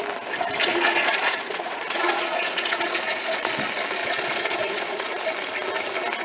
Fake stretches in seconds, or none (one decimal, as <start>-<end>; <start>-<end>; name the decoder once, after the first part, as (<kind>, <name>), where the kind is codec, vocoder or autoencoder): 0.6-3.5 (vocoder, Vocos); 4.0-5.2